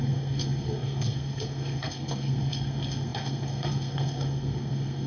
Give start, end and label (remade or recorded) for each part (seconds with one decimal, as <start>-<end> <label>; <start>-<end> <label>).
0.0-5.1 remade